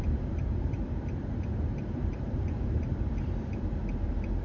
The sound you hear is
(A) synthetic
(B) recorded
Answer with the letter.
A